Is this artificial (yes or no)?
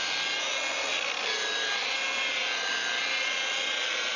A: no